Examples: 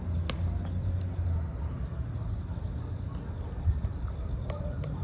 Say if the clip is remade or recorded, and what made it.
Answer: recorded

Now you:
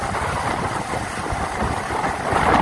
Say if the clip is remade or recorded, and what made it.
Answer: recorded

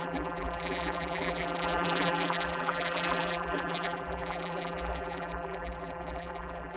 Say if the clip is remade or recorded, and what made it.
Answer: remade, vocoder, BigVGAN v2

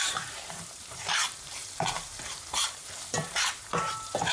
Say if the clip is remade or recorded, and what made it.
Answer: remade, vocoder, BigVGAN v2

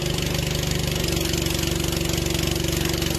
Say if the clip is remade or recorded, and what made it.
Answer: recorded